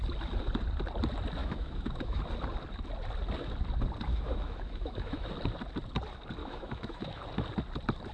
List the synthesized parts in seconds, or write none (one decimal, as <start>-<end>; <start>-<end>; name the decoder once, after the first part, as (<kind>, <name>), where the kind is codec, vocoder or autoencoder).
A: 1.4-2.2 (autoencoder, DAC-VAE); 4.1-5.3; 6.4-7.2

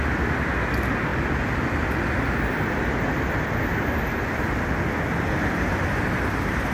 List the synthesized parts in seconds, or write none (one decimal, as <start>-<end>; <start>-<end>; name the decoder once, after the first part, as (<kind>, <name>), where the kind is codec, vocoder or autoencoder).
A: none